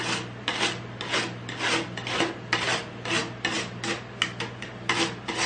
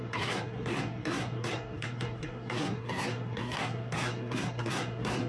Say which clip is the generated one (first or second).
second